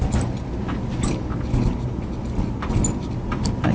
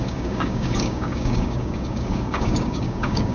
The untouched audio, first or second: first